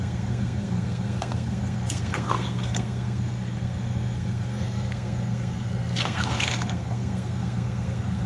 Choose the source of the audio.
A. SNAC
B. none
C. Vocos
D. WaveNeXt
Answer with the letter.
A